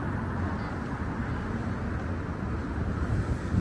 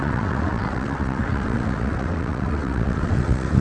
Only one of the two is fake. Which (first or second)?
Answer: second